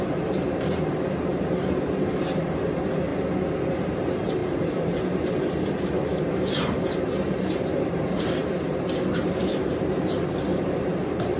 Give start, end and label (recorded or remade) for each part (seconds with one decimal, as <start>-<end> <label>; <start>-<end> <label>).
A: 0.0-3.1 remade; 3.1-3.7 recorded; 3.7-11.4 remade